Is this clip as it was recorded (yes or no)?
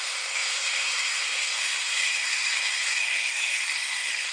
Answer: no